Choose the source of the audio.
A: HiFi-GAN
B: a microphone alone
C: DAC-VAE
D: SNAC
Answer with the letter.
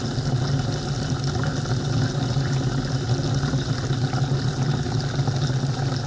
B